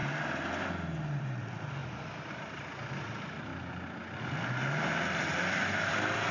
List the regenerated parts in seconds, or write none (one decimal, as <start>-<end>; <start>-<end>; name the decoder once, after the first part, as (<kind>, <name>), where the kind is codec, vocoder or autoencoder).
1.2-1.8 (vocoder, BigVGAN v2); 2.3-3.5; 4.9-6.3